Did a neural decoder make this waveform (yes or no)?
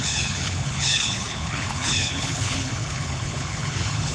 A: yes